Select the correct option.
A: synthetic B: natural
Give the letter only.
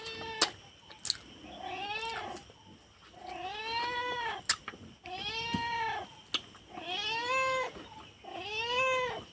B